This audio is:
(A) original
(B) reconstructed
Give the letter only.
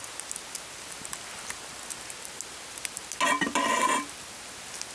A